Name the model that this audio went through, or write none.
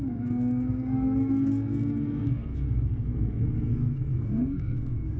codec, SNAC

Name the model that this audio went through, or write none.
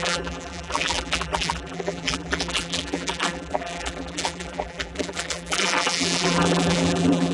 vocoder, BigVGAN v2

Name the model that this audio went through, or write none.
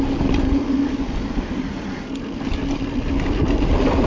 none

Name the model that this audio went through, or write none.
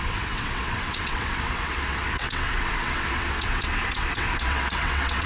vocoder, WaveNeXt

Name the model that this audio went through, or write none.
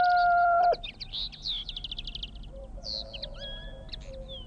none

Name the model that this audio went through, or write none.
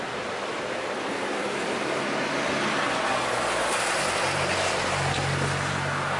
none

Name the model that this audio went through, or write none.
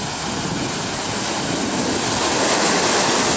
none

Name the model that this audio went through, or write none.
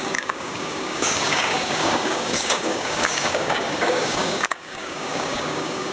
codec, DAC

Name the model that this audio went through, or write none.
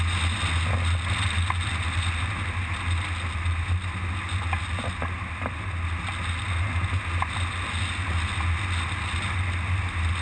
none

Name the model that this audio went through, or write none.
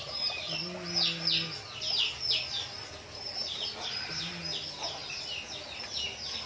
none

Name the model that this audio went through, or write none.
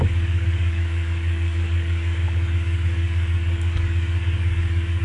codec, DAC